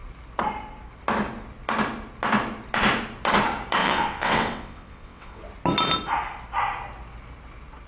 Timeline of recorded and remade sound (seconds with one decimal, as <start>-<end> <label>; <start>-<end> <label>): 0.0-3.8 recorded; 3.8-5.4 remade; 5.4-7.9 recorded